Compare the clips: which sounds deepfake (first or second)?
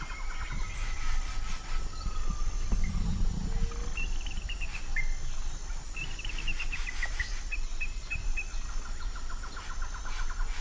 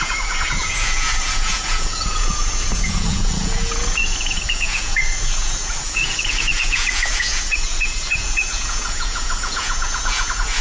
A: second